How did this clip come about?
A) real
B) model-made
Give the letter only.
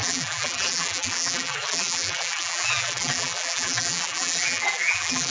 B